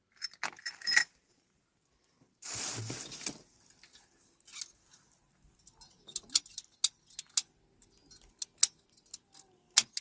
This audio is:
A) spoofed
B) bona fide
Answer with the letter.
B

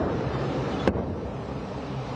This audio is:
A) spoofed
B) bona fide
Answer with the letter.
A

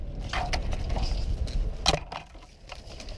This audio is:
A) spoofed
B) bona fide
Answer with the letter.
B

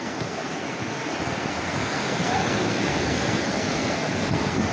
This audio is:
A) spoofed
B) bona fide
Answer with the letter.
A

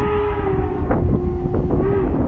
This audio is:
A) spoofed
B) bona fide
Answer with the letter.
B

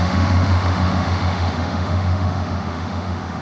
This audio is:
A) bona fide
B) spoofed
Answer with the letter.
B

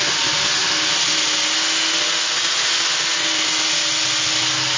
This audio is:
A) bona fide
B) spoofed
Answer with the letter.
A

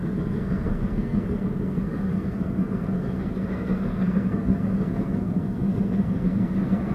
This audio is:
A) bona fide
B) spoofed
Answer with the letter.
B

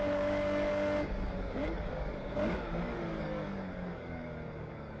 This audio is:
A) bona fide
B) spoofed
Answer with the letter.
B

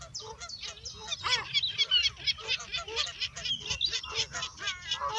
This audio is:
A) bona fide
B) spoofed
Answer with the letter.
A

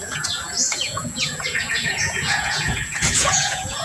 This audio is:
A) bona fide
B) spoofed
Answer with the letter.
B